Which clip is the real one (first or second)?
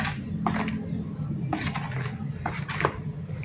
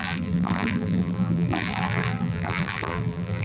first